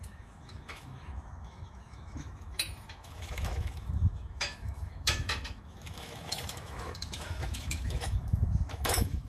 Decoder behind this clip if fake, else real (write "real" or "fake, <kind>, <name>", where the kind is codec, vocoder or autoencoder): fake, autoencoder, DAC-VAE